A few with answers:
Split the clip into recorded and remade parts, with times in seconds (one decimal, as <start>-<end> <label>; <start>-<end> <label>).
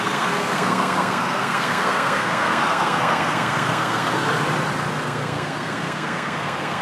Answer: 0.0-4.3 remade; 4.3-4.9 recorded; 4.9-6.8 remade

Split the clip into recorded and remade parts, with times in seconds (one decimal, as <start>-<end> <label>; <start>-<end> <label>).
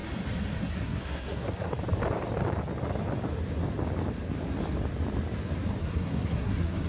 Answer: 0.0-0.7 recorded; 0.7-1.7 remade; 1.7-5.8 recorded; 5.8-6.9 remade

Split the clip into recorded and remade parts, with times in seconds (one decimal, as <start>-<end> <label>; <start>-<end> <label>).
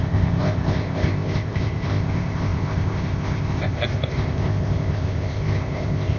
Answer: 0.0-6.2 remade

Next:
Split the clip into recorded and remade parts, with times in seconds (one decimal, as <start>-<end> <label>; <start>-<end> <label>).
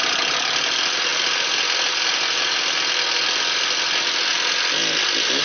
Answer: 0.0-5.4 recorded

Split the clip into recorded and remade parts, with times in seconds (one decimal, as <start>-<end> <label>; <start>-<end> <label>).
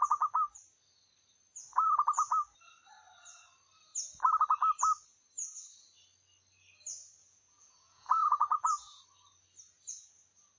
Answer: 0.0-7.2 recorded; 7.2-9.0 remade; 9.0-10.6 recorded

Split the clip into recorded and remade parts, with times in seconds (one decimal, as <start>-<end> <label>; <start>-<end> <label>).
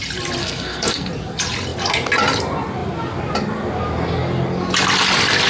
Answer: 0.0-0.4 recorded; 0.4-1.1 remade; 1.1-5.5 recorded